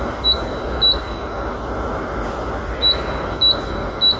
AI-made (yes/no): no